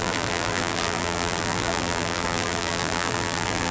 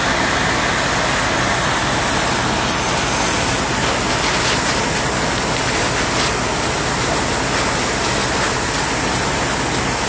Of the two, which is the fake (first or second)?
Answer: first